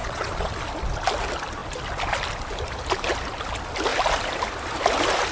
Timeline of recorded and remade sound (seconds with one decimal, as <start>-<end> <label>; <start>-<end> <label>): 0.0-0.5 remade; 0.5-5.3 recorded